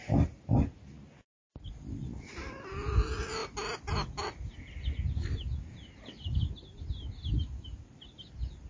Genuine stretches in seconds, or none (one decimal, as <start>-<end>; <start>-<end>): 0.0-8.7